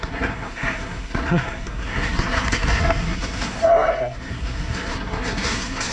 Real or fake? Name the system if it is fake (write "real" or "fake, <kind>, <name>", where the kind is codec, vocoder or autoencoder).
fake, codec, SNAC